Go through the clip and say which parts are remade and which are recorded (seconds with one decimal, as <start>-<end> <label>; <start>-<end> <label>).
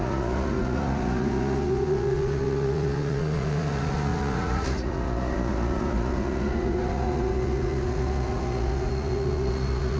0.0-10.0 remade